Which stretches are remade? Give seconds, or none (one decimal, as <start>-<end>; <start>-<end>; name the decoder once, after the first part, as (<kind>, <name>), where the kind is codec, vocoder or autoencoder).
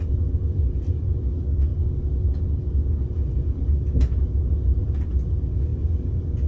none